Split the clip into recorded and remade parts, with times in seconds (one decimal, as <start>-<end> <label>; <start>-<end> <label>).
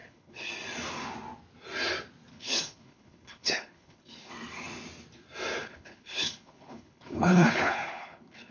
0.0-0.5 remade; 0.5-2.3 recorded; 2.3-4.3 remade; 4.3-5.6 recorded; 5.6-8.5 remade